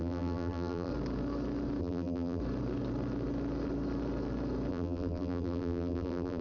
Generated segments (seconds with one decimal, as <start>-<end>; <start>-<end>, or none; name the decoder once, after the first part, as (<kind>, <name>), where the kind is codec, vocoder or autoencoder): 0.0-0.9 (vocoder, BigVGAN v2); 1.8-2.4; 4.7-6.4